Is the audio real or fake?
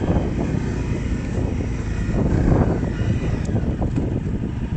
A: real